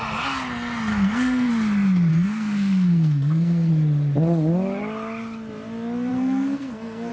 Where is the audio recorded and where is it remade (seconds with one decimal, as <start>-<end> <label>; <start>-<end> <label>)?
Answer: 0.0-0.9 recorded; 0.9-1.5 remade; 1.5-2.1 recorded; 2.1-3.7 remade; 3.7-6.1 recorded; 6.1-7.1 remade